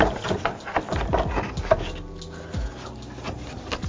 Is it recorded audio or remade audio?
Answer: recorded